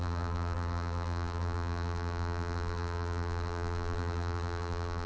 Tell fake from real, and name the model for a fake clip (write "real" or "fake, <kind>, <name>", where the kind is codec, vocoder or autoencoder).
fake, vocoder, BigVGAN v2